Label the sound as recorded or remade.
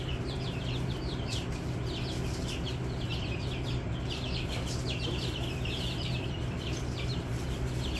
remade